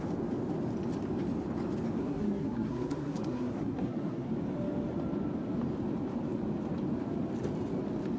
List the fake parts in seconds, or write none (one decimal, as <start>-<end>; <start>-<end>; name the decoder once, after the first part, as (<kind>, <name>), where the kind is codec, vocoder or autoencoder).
2.0-4.3 (codec, SNAC)